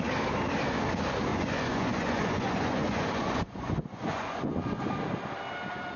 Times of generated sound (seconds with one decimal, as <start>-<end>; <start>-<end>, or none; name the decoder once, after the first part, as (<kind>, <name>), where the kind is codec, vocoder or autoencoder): 1.3-4.8 (vocoder, Vocos)